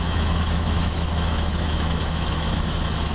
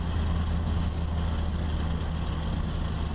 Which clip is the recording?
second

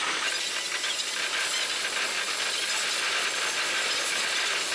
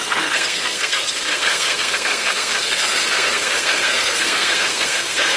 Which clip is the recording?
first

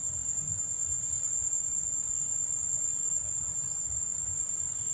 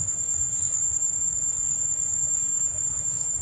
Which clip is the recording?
first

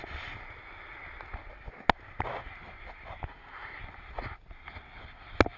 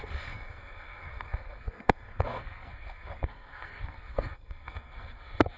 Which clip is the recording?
first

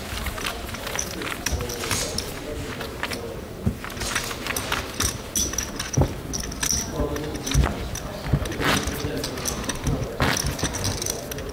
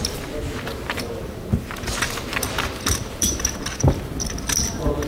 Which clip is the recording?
first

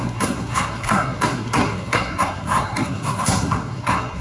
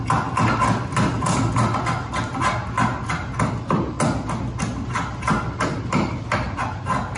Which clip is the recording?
second